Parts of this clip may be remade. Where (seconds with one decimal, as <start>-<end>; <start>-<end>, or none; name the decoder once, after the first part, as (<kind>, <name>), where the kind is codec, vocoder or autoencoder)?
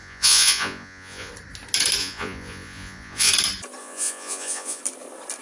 0.0-1.3 (vocoder, Vocos); 2.0-3.3; 3.8-4.8